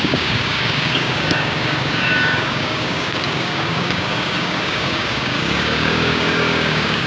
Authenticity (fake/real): fake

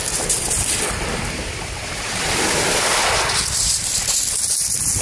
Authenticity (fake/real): real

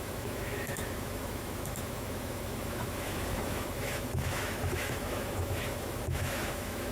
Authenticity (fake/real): fake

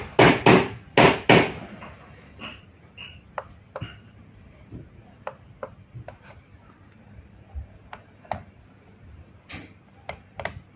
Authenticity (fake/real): real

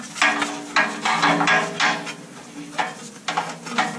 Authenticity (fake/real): real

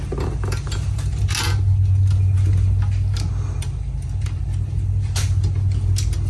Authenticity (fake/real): real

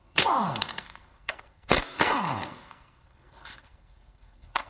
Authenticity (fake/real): fake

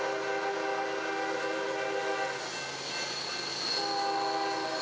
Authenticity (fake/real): real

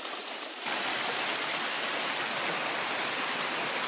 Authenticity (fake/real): real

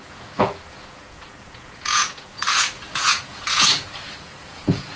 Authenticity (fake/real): fake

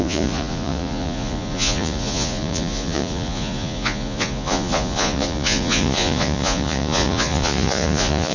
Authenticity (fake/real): fake